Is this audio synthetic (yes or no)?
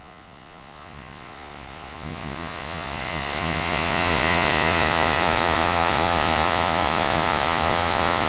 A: yes